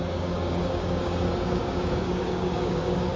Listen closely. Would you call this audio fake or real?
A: fake